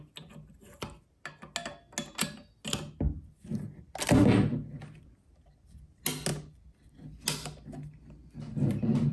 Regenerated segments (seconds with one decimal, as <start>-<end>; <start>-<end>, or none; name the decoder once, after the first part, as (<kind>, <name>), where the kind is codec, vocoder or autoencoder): none